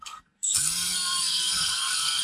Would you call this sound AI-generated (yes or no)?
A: yes